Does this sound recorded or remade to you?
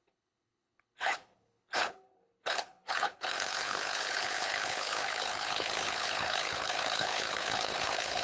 remade